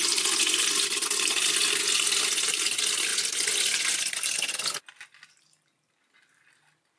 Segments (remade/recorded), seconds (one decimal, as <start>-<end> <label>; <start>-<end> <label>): 0.0-7.0 recorded